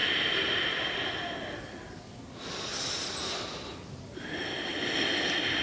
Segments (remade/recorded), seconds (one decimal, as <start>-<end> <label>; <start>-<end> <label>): 0.0-5.6 recorded